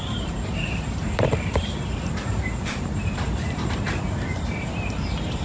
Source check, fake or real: fake